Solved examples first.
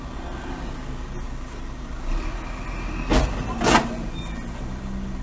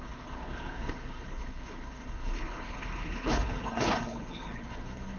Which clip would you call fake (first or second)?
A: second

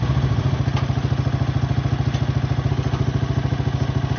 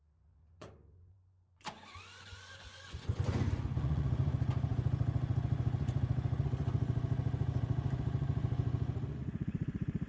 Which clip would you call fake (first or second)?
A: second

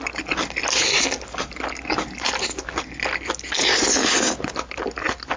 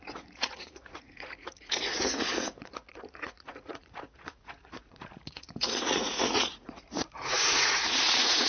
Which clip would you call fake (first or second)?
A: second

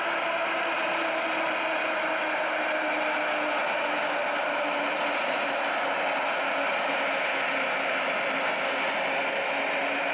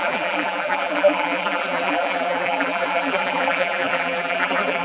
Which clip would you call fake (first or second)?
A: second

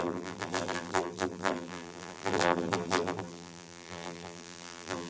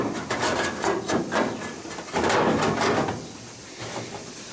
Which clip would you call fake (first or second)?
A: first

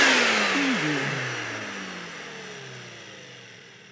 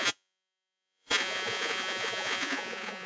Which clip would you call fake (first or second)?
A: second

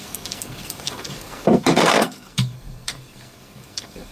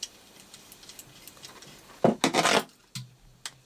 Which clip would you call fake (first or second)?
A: first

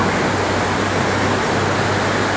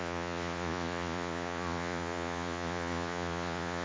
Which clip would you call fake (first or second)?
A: second